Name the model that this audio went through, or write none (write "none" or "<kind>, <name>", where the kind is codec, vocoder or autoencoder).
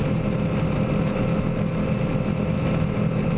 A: none